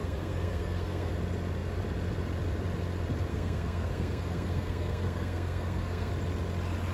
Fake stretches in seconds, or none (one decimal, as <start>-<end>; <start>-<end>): 0.0-1.1; 3.3-6.1

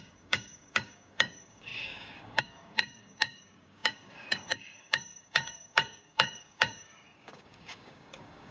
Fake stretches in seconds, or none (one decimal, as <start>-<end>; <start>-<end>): 0.0-8.5

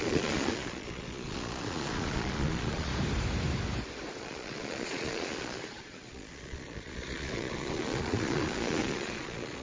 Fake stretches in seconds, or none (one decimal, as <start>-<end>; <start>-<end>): 0.0-2.9; 4.2-9.6

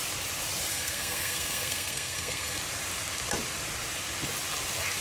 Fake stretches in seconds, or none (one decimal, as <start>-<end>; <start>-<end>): 0.7-2.6

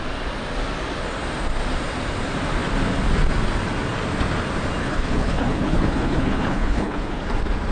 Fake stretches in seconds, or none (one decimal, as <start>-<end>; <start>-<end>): 4.8-7.2

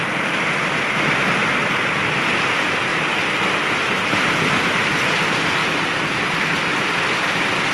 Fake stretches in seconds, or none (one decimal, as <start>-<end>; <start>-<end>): none

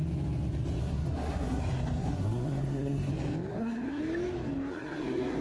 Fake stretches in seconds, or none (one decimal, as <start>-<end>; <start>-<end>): 0.8-1.6; 2.0-3.1; 3.5-4.0; 4.7-5.4